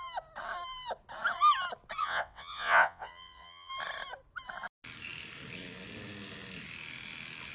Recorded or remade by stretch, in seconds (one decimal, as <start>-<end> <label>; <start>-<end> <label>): 0.0-2.0 recorded; 2.0-3.7 remade; 3.7-7.5 recorded